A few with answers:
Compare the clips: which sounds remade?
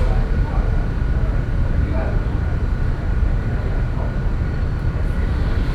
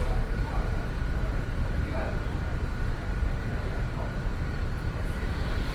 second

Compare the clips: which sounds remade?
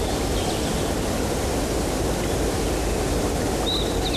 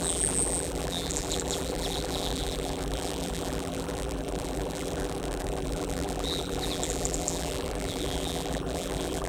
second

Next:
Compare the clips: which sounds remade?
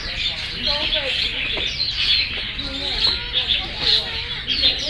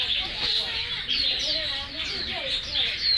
second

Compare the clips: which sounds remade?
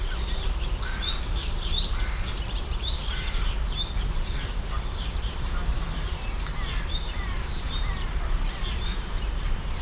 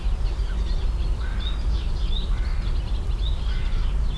first